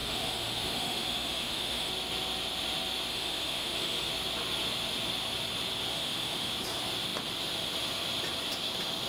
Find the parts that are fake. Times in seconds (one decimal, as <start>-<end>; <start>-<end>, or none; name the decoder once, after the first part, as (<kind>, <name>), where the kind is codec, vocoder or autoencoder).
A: 0.0-1.9 (autoencoder, DAC-VAE); 3.1-4.1; 5.9-6.5